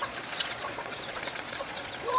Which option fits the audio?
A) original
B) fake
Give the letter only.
B